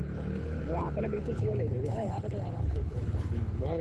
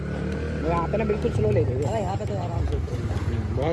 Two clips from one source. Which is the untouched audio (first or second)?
second